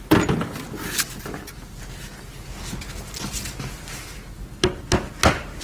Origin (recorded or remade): recorded